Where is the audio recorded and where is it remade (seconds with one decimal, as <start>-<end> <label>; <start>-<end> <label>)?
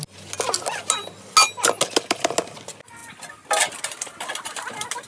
0.0-5.1 recorded